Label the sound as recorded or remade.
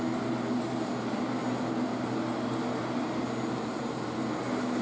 recorded